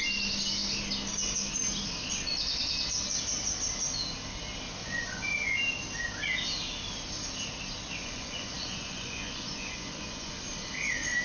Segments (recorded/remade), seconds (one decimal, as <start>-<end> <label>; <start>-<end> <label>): 0.0-4.8 recorded; 4.8-5.3 remade; 5.3-8.0 recorded; 8.0-10.3 remade; 10.3-11.2 recorded